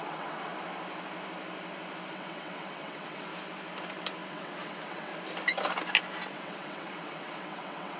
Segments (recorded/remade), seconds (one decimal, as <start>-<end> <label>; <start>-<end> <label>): 0.0-0.5 remade; 0.5-2.1 recorded; 2.1-3.3 remade; 3.3-4.3 recorded; 4.3-5.1 remade; 5.1-6.3 recorded; 6.3-8.0 remade